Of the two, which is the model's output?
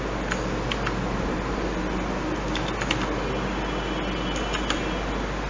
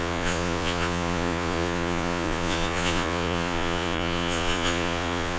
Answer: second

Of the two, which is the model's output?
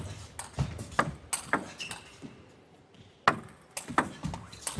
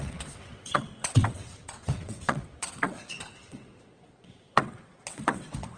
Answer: second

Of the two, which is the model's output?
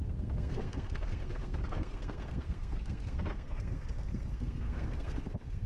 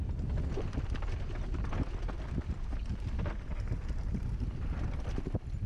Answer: first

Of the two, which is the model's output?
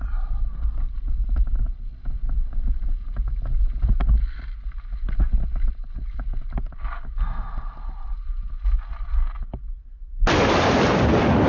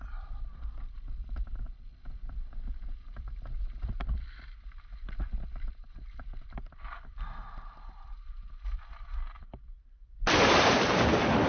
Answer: second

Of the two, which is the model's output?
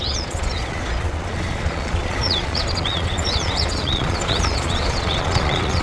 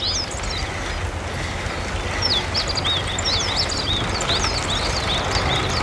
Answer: first